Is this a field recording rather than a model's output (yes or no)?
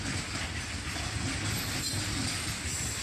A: yes